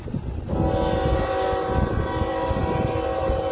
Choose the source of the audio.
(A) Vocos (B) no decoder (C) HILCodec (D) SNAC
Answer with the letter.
B